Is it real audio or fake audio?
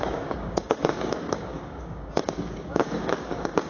fake